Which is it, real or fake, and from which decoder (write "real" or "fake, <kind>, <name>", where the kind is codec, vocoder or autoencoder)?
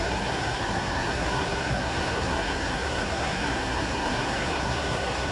fake, codec, SNAC